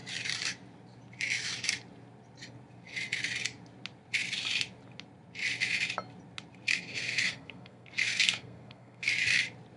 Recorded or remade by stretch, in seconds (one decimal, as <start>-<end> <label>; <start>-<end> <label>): 0.0-6.7 recorded; 6.7-9.1 remade; 9.1-9.8 recorded